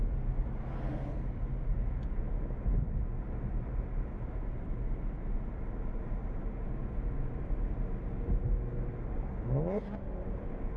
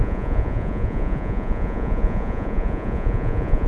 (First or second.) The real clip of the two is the first